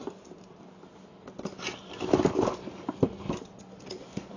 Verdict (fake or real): real